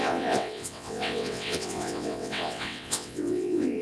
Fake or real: fake